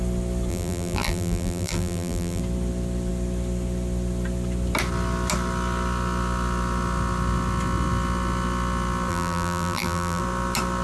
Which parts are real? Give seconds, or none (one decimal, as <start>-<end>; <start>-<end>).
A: 0.0-0.5; 2.4-9.1; 10.2-10.8